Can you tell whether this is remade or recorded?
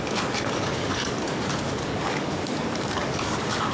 remade